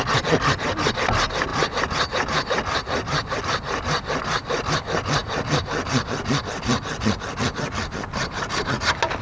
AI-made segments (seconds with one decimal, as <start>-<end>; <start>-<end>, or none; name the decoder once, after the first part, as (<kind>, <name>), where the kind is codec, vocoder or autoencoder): none